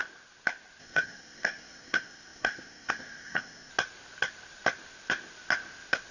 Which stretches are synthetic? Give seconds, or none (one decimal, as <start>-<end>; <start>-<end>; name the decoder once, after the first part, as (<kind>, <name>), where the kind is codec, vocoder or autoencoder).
0.8-3.7 (codec, SNAC)

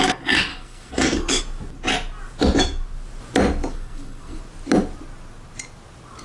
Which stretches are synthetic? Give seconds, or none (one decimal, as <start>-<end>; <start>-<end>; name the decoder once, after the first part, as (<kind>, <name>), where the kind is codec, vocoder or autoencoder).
0.5-1.4 (codec, SNAC); 3.7-4.4

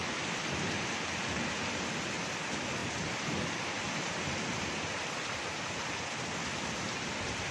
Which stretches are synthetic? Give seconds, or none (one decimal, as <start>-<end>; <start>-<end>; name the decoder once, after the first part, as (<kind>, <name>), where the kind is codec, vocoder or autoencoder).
none

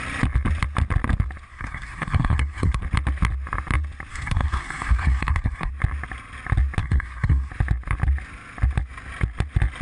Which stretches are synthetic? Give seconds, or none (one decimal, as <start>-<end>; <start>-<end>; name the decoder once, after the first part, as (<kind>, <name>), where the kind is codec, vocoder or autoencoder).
1.5-2.8 (codec, SNAC); 4.1-5.7; 6.8-7.5

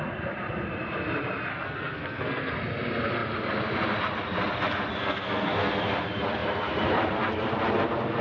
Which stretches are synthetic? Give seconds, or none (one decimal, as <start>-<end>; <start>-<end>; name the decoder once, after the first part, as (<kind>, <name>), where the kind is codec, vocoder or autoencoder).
1.5-2.5 (codec, SNAC); 5.0-5.7

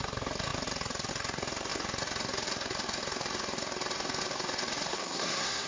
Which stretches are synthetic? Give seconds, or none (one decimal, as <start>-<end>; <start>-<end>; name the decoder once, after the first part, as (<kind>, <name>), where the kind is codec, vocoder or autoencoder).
4.9-5.7 (codec, SNAC)

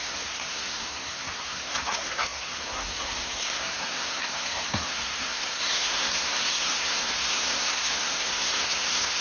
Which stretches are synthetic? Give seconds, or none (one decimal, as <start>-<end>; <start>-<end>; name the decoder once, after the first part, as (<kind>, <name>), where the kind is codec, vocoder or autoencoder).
0.0-9.2 (codec, SNAC)